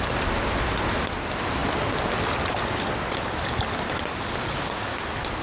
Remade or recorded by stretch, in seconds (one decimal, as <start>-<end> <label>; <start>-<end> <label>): 0.0-5.4 recorded

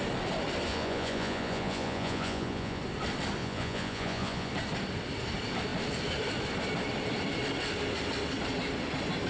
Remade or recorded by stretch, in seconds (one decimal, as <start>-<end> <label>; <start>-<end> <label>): 0.0-0.7 recorded; 0.7-2.8 remade; 2.8-3.4 recorded; 3.4-4.5 remade; 4.5-9.3 recorded

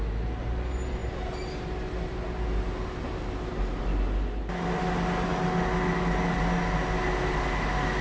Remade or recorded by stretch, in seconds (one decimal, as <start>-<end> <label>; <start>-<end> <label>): 0.0-8.0 recorded

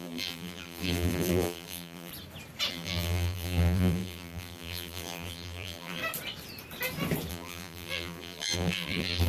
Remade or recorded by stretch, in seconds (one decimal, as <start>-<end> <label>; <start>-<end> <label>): 0.0-2.1 remade; 2.1-2.7 recorded; 2.7-6.0 remade; 6.0-7.3 recorded; 7.3-9.3 remade